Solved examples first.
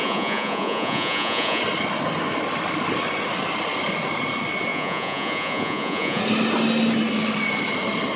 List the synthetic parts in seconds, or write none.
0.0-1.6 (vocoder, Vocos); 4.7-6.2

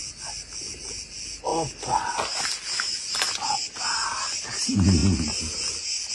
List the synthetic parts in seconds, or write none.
none

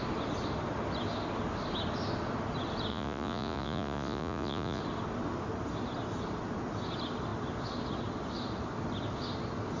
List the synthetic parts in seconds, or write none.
2.9-4.8 (vocoder, Vocos)

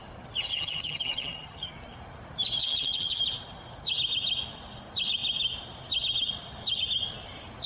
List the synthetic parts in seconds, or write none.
0.5-1.7 (vocoder, HiFi-GAN); 2.6-3.2

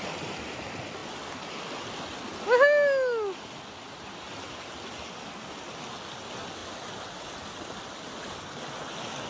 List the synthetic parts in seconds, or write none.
none

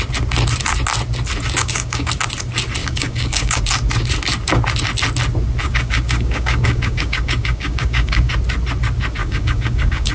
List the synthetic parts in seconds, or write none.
1.6-2.1 (codec, DAC); 2.8-3.6; 5.6-8.3; 9.2-10.1

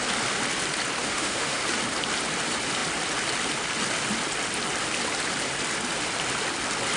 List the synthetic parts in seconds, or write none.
1.0-1.6 (autoencoder, DAC-VAE)